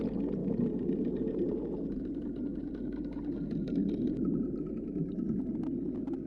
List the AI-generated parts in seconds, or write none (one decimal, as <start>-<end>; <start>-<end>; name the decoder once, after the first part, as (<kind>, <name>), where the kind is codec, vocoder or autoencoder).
0.4-1.6 (vocoder, BigVGAN v2); 3.6-5.5